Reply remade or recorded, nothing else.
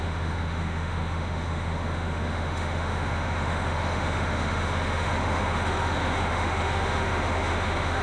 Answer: remade